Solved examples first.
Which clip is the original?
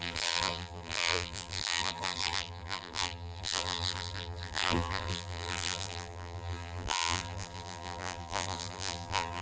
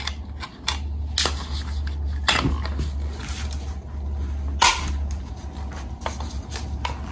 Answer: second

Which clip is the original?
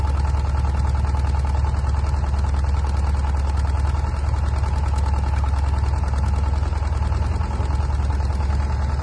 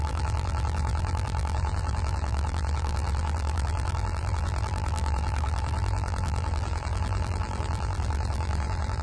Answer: first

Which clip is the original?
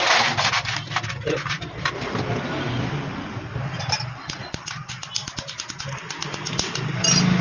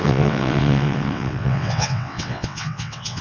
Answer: first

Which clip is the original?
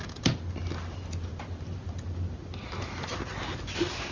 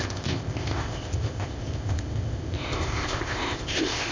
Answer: first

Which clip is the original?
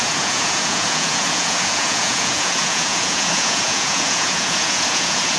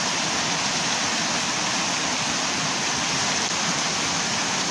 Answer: second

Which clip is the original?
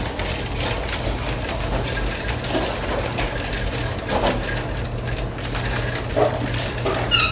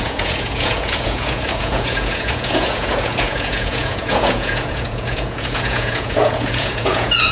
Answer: first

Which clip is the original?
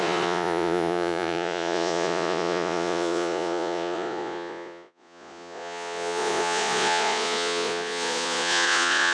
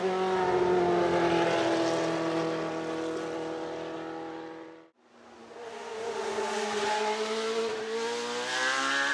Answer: second